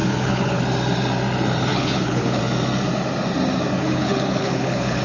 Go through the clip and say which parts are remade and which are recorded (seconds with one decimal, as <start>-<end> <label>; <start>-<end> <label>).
0.0-0.6 remade; 0.6-1.7 recorded; 1.7-2.4 remade; 2.4-3.8 recorded; 3.8-5.0 remade